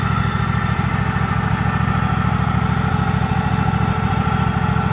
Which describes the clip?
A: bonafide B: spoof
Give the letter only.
A